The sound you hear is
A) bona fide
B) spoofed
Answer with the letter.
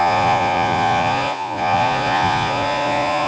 B